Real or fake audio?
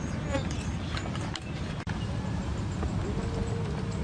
real